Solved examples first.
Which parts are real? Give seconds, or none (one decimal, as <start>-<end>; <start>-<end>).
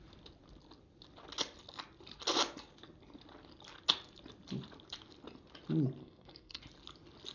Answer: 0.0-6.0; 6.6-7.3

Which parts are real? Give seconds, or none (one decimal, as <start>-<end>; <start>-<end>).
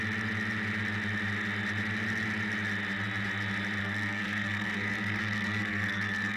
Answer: 0.0-3.8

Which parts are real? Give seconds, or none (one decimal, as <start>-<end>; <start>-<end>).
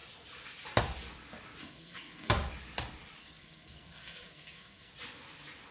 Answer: 0.0-1.6; 2.3-3.2; 4.9-5.7